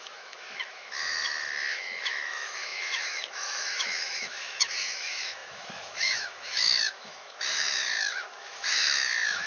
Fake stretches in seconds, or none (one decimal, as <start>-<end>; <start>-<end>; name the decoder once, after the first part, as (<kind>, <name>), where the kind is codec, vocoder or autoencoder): 0.0-9.5 (autoencoder, DAC-VAE)